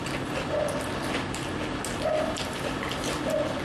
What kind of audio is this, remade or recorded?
recorded